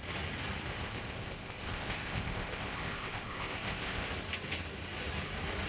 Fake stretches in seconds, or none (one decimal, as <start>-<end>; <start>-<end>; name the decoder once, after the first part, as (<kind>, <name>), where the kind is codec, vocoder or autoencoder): 0.7-4.1 (codec, ZipCodec)

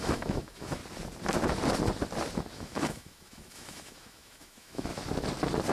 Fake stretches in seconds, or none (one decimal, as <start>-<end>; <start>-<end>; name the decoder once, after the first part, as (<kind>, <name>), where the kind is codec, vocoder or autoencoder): 0.0-0.8 (autoencoder, DAC-VAE); 2.5-4.9

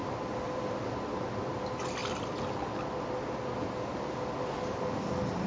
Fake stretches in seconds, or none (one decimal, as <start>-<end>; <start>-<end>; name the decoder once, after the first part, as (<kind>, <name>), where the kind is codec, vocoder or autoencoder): none

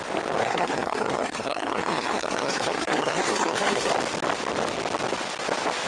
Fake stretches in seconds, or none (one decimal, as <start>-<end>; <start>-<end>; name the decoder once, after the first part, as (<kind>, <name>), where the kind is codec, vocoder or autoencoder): 0.4-3.9 (codec, SNAC)

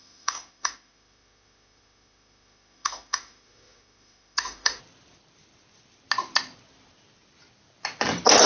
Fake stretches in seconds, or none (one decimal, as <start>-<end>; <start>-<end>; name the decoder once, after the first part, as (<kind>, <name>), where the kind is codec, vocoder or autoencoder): 0.0-4.8 (autoencoder, DAC-VAE)

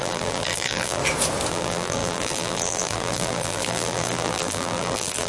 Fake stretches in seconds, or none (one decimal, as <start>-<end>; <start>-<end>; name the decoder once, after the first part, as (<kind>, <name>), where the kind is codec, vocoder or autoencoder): 0.0-1.0 (vocoder, BigVGAN v2); 1.5-5.3

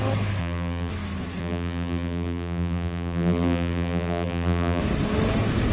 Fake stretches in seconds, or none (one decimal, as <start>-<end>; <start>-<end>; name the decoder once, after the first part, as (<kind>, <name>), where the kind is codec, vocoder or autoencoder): 0.4-0.9 (vocoder, BigVGAN v2); 1.4-4.8